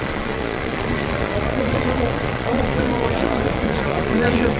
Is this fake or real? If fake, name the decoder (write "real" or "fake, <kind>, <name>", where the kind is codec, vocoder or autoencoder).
fake, vocoder, Vocos